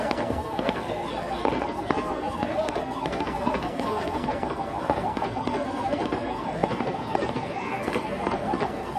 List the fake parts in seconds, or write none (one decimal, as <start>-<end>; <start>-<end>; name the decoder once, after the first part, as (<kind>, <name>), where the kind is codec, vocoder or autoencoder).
0.0-9.0 (codec, SNAC)